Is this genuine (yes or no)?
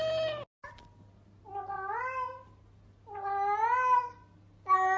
yes